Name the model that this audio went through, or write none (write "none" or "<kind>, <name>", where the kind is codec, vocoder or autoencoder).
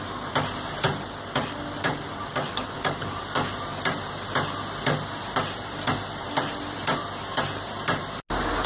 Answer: none